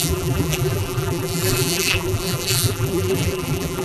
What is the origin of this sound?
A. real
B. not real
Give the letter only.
B